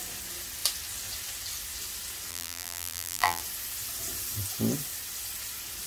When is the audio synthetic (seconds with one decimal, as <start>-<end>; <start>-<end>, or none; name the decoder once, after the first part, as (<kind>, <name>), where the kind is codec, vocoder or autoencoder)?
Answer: 2.3-3.4 (vocoder, BigVGAN v2)